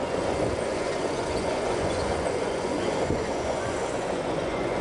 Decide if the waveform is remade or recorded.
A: remade